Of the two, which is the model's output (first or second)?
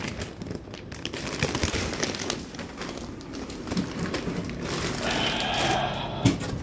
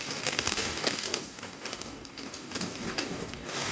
second